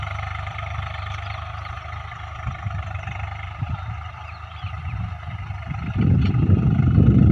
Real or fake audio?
fake